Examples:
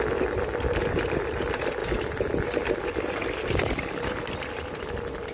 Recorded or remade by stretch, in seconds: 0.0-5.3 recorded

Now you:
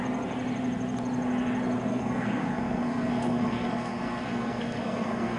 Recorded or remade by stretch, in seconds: 0.0-1.9 recorded; 1.9-5.4 remade

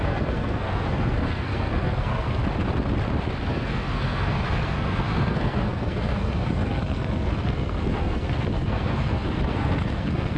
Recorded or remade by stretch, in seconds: 0.0-2.4 remade; 2.4-3.5 recorded; 3.5-10.4 remade

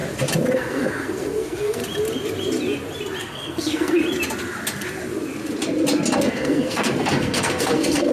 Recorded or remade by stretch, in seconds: 0.0-0.5 recorded; 0.5-1.8 remade; 1.8-3.2 recorded; 3.2-4.0 remade; 4.0-6.2 recorded; 6.2-8.1 remade

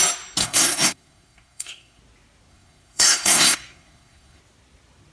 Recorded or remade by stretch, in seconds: 0.0-0.4 recorded; 0.4-2.0 remade; 2.0-2.5 recorded; 2.5-4.4 remade; 4.4-5.1 recorded